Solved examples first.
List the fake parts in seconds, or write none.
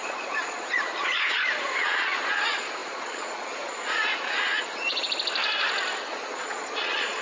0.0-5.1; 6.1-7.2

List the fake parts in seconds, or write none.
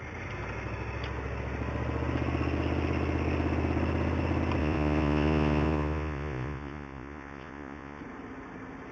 4.6-8.0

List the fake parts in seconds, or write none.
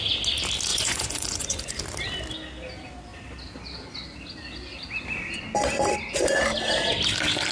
0.7-1.8